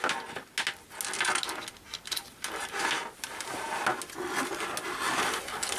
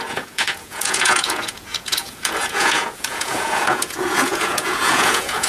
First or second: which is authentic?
first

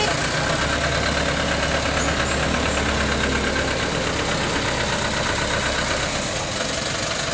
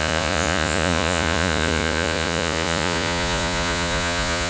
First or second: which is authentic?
first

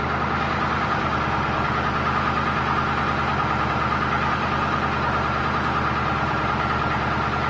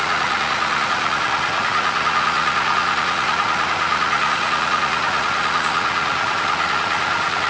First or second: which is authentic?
first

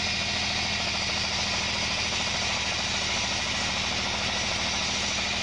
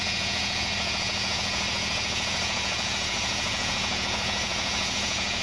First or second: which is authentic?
first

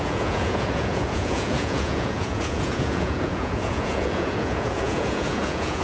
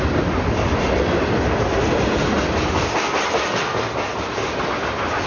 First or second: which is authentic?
second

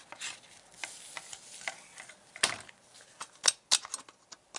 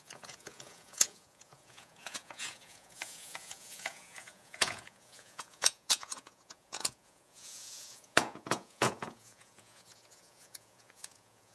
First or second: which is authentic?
first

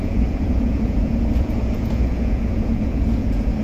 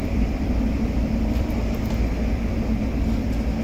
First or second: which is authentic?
second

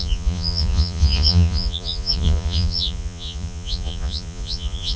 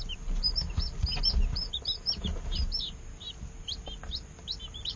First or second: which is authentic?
second